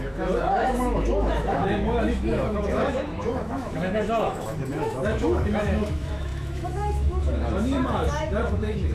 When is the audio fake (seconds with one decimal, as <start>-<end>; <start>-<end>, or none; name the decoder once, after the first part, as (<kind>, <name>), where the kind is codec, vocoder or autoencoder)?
0.0-8.9 (autoencoder, DAC-VAE)